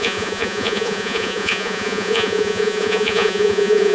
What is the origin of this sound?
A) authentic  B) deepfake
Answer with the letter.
B